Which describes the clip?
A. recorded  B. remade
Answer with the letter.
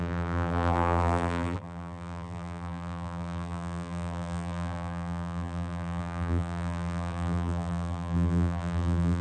B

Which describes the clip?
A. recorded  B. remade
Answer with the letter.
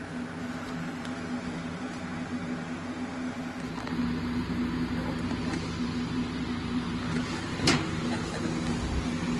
A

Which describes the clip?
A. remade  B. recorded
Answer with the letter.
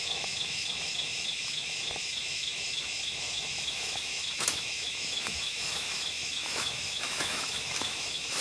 A